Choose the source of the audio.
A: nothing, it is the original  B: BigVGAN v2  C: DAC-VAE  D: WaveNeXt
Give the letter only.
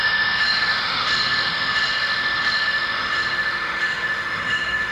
C